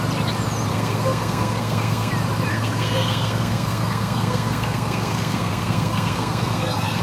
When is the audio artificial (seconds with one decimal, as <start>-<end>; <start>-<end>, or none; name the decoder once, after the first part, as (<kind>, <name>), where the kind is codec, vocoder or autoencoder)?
0.7-2.1 (codec, SNAC); 2.5-7.0